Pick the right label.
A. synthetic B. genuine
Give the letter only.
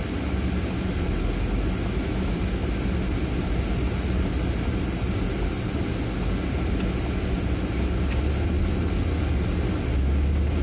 B